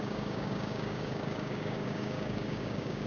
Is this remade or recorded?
remade